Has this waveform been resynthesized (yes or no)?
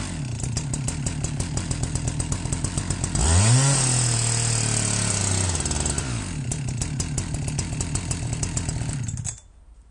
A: no